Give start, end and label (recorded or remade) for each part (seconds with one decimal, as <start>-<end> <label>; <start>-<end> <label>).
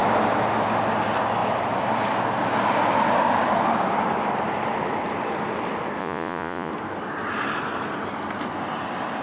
0.0-6.0 recorded; 6.0-6.7 remade; 6.7-9.2 recorded